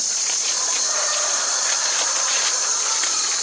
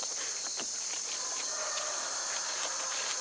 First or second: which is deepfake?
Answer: first